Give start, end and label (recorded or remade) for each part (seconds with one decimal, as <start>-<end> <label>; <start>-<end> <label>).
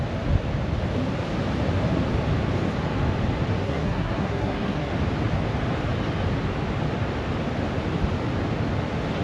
0.0-3.6 recorded; 3.6-4.9 remade; 4.9-9.2 recorded